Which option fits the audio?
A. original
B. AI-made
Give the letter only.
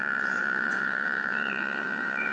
B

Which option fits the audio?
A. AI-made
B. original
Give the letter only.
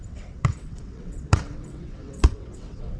A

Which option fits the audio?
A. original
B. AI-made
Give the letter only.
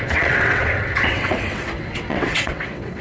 B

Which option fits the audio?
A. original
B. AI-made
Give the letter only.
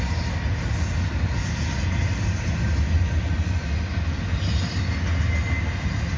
A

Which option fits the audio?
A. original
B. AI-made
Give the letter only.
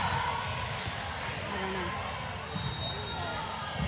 A